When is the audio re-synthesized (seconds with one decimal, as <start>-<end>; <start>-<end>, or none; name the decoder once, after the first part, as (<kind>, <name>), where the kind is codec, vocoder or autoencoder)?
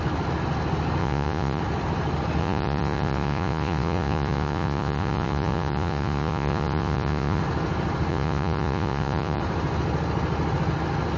1.0-1.6 (vocoder, Vocos); 2.4-7.4; 8.1-9.4